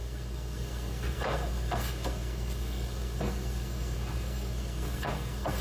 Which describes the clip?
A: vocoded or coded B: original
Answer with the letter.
A